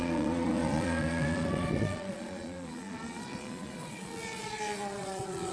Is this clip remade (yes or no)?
yes